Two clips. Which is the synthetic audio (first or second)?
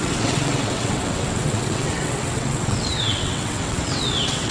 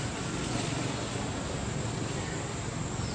first